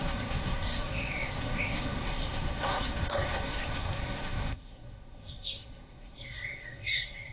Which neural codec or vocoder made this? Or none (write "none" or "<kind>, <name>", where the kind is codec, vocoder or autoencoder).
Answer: codec, SNAC